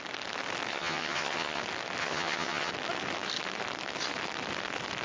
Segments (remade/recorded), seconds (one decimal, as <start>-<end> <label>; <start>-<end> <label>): 0.0-0.7 recorded; 0.7-1.6 remade; 1.6-2.0 recorded; 2.0-2.7 remade; 2.7-5.0 recorded